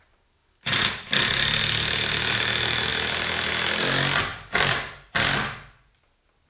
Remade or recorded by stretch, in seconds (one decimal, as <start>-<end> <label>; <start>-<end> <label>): 0.0-0.4 recorded; 0.4-1.6 remade; 1.6-2.9 recorded; 2.9-3.5 remade; 3.5-4.3 recorded; 4.3-5.1 remade; 5.1-6.5 recorded